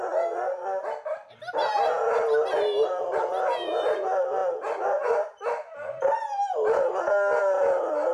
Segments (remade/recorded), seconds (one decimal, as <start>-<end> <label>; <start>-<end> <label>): 0.0-8.1 recorded

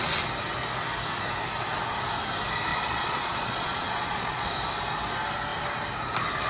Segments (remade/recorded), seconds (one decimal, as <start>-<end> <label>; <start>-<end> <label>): 0.0-2.7 recorded; 2.7-4.5 remade; 4.5-6.5 recorded

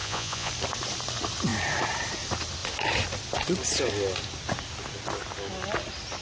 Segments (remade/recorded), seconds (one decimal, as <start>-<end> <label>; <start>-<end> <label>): 0.0-0.5 remade; 0.5-6.2 recorded

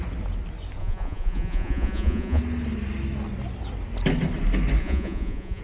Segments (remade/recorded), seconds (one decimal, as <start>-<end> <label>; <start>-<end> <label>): 0.0-0.8 recorded; 0.8-2.4 remade; 2.4-4.8 recorded; 4.8-5.6 remade

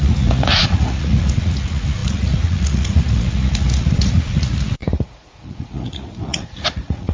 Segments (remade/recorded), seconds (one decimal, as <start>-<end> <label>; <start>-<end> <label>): 0.0-7.1 remade